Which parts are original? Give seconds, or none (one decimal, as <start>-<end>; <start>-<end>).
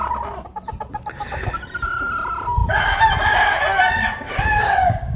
0.0-4.4